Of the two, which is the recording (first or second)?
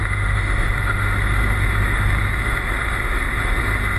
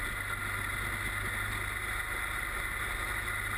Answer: second